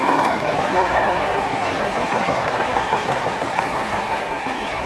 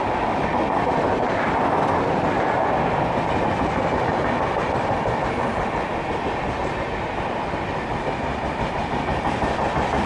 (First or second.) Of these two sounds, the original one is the second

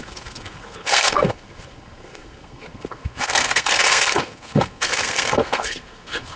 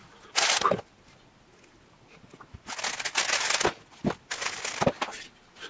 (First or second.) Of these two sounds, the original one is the second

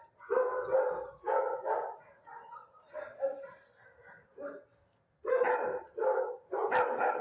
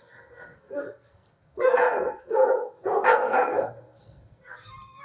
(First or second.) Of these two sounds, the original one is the first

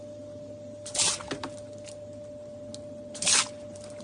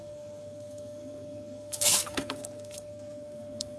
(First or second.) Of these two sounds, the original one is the first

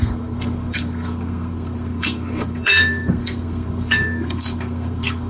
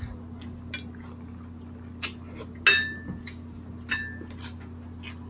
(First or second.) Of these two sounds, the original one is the second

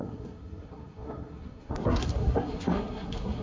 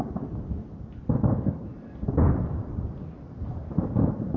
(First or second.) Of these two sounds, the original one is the second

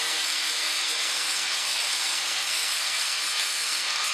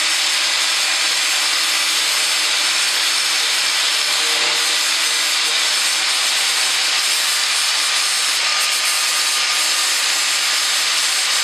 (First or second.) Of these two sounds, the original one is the second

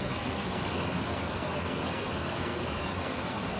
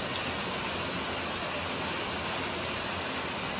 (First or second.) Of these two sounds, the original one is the second